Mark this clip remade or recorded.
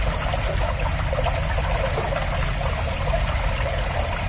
recorded